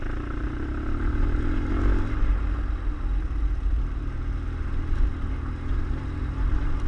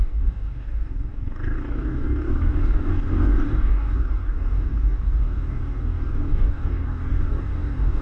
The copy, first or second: second